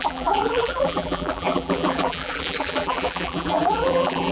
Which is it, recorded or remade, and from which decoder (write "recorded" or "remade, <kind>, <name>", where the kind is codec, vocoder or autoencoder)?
remade, vocoder, BigVGAN v2